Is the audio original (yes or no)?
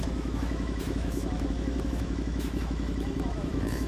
no